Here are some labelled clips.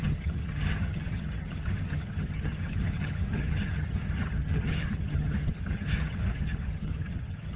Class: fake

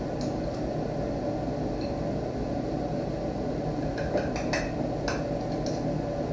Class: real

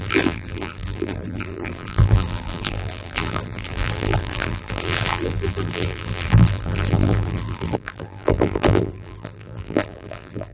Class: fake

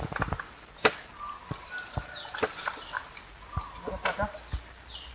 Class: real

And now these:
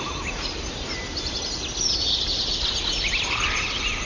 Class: real